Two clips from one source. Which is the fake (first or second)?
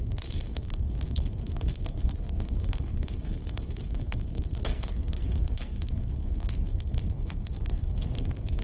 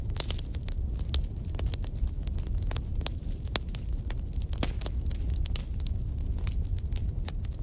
first